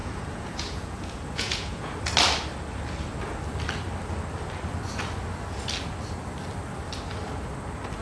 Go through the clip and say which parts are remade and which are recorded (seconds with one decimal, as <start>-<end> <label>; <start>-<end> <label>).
0.0-2.0 remade; 2.0-8.0 recorded